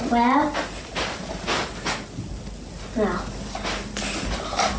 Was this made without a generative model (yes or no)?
yes